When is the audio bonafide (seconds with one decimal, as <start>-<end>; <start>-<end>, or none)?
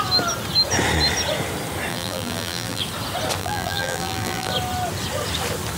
0.0-1.9; 2.8-3.4; 4.5-5.8